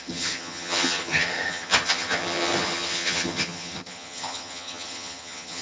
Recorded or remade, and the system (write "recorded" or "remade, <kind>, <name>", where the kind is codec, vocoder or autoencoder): remade, vocoder, HiFi-GAN